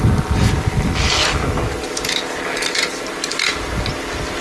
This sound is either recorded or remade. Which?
recorded